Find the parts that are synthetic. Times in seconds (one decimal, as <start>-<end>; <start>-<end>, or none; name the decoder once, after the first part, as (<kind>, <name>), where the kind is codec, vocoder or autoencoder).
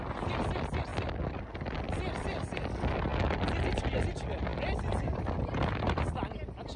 none